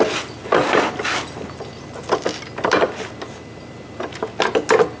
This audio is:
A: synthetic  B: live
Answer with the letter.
B